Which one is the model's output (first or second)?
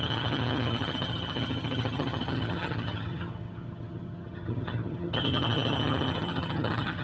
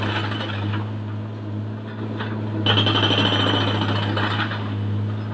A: first